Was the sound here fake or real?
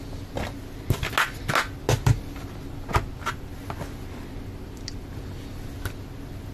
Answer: real